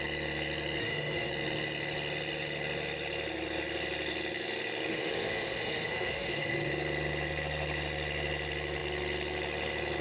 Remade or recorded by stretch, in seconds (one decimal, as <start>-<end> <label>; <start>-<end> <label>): 0.0-0.8 recorded; 0.8-1.3 remade; 1.3-4.9 recorded; 4.9-6.7 remade; 6.7-10.0 recorded